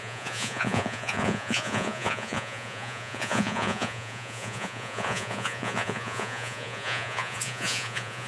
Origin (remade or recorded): remade